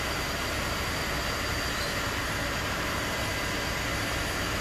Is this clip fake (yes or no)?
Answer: no